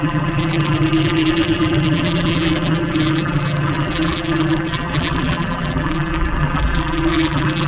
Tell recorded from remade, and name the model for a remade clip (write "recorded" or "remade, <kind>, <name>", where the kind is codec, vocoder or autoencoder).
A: remade, vocoder, BigVGAN v2